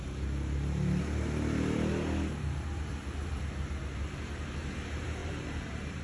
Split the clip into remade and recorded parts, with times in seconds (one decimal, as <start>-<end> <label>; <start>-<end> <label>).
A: 0.0-5.2 recorded; 5.2-6.0 remade